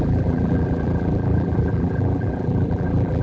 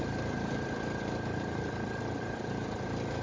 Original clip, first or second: second